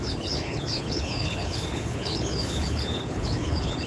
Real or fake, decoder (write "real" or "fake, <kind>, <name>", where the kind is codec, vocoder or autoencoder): fake, codec, HILCodec